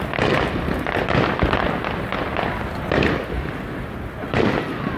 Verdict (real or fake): real